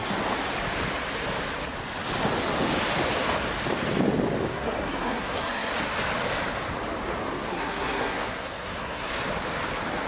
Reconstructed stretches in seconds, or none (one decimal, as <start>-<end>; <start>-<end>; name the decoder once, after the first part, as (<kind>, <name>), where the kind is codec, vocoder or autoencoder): 4.5-5.7 (codec, SNAC); 7.5-9.1